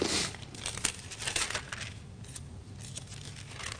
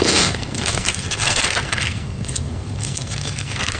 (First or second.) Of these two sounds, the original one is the first